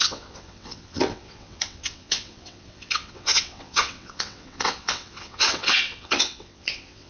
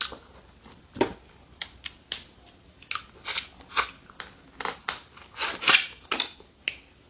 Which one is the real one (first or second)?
second